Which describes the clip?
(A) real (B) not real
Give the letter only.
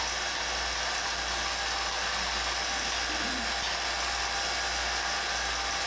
A